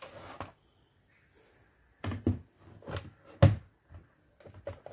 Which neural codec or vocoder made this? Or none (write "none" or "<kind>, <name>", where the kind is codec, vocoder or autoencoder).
none